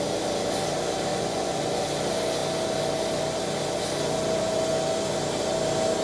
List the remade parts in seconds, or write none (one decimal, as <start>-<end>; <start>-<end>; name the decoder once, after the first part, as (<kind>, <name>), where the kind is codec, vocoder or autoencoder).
1.1-1.8 (vocoder, Vocos)